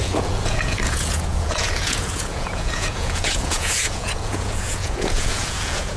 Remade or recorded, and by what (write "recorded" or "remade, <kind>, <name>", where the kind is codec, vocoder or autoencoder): remade, vocoder, Vocos